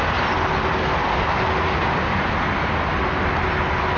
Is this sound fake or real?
real